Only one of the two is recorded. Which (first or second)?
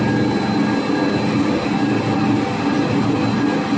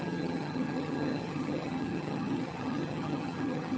first